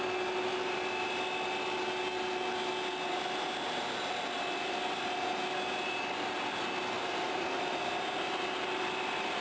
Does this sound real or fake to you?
real